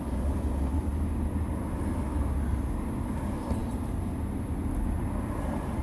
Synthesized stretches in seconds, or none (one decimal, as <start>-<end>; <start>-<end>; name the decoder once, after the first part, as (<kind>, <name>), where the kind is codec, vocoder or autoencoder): none